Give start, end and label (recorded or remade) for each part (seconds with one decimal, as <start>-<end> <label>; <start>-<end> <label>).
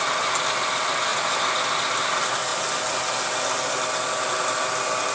0.0-5.1 recorded